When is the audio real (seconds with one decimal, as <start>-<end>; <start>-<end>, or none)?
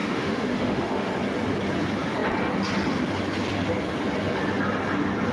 1.1-5.3